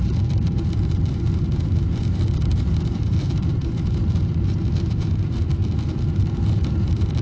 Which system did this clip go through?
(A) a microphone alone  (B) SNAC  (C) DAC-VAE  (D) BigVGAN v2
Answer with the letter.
D